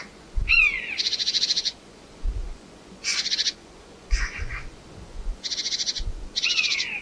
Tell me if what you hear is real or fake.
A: fake